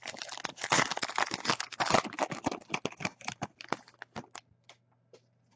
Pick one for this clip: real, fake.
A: real